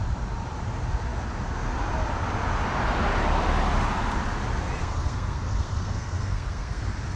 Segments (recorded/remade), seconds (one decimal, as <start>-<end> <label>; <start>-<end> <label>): 0.0-4.8 recorded; 4.8-6.8 remade; 6.8-7.2 recorded